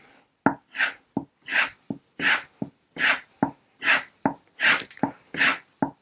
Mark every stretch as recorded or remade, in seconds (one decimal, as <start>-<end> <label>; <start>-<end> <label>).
0.0-6.0 recorded